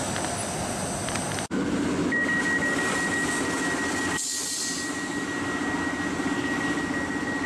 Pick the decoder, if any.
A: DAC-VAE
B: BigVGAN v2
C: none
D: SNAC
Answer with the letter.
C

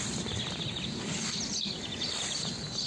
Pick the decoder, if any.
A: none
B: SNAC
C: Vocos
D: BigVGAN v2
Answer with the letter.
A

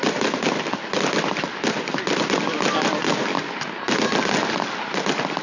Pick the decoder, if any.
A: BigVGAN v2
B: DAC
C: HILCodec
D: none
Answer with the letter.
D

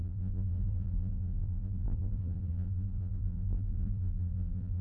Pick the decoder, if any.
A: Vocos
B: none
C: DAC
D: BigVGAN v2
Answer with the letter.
D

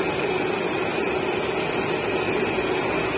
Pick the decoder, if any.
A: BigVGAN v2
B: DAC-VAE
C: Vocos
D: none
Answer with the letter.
D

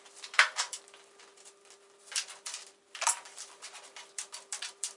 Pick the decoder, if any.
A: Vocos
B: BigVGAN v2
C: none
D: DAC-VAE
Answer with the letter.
B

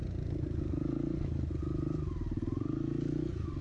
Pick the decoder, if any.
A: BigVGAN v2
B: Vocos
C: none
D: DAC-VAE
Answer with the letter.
C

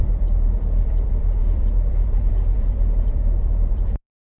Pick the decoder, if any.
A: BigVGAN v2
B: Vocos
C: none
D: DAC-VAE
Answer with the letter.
A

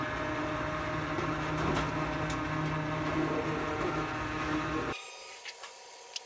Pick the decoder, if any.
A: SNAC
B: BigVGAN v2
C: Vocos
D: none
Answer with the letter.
D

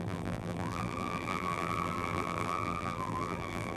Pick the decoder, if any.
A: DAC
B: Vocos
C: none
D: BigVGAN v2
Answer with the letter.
D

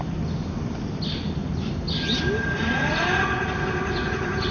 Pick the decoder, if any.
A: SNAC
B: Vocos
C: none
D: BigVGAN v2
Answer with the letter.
C